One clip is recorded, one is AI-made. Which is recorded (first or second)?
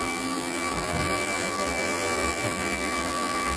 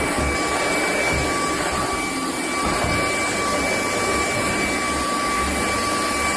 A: second